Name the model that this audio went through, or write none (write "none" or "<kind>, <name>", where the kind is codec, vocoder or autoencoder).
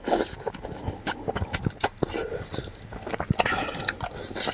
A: none